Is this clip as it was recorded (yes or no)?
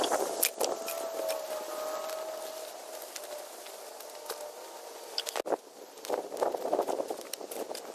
yes